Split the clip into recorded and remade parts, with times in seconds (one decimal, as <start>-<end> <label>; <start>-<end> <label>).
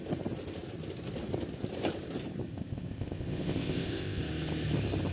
0.0-2.5 recorded; 2.5-4.2 remade; 4.2-5.1 recorded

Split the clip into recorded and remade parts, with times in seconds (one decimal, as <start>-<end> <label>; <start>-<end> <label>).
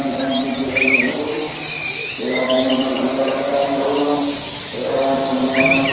0.0-1.8 recorded; 1.8-2.7 remade; 2.7-3.6 recorded; 3.6-4.2 remade; 4.2-5.9 recorded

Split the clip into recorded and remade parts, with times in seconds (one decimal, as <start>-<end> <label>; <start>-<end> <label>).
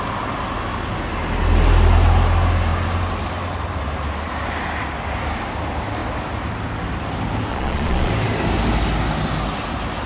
0.0-7.5 recorded; 7.5-8.1 remade; 8.1-10.1 recorded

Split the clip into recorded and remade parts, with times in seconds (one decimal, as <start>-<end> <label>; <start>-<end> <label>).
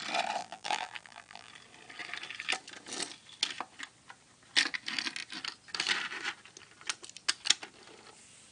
0.0-0.4 recorded; 0.4-1.5 remade; 1.5-8.5 recorded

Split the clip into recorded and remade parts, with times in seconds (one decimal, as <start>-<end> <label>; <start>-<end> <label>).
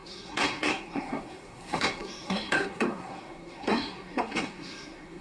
0.0-5.2 remade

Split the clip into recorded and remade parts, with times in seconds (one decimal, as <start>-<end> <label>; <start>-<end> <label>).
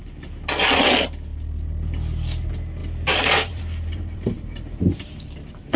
0.0-2.8 recorded; 2.8-5.8 remade